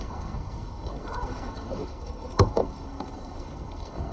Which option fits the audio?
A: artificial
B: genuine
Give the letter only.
A